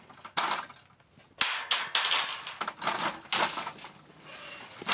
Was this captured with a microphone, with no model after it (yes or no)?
yes